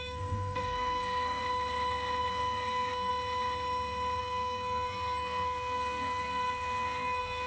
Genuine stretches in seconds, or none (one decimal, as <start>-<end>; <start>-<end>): 1.4-2.3; 3.1-4.2